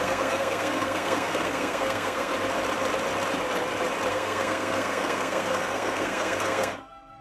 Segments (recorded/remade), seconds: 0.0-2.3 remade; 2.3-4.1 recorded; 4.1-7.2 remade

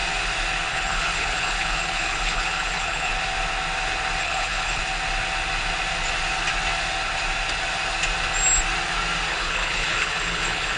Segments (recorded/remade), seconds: 0.0-0.7 recorded; 0.7-3.1 remade; 3.1-4.2 recorded; 4.2-4.8 remade; 4.8-9.3 recorded; 9.3-10.8 remade

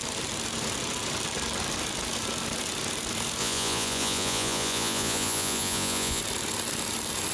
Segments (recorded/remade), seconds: 0.0-3.4 recorded; 3.4-6.2 remade; 6.2-7.3 recorded

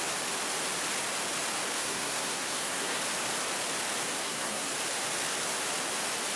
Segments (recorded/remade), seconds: 0.0-1.8 recorded; 1.8-3.0 remade; 3.0-4.2 recorded; 4.2-4.7 remade; 4.7-6.4 recorded

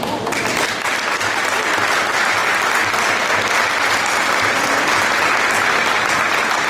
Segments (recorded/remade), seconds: 0.0-2.4 recorded; 2.4-3.3 remade; 3.3-6.7 recorded